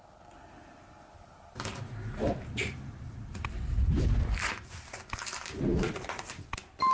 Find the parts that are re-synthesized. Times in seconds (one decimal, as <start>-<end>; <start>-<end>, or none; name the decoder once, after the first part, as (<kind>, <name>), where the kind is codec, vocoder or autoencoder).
none